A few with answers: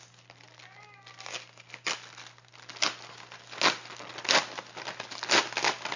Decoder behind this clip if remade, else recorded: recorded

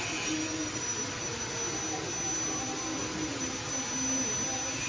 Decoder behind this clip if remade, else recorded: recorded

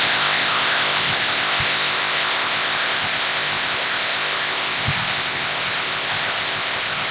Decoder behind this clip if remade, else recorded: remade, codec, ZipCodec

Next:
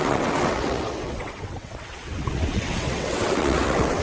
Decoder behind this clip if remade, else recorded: remade, vocoder, WaveNeXt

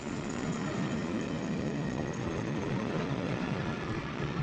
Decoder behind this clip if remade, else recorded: remade, vocoder, Vocos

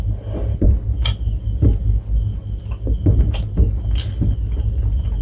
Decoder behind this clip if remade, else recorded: recorded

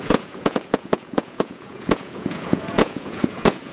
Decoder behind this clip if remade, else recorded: remade, vocoder, Vocos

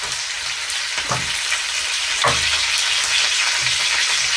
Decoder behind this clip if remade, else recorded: recorded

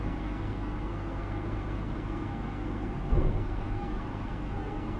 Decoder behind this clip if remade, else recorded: remade, codec, SNAC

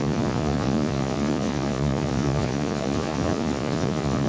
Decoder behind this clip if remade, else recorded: remade, vocoder, Vocos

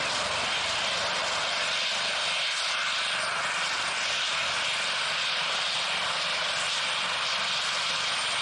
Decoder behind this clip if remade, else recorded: recorded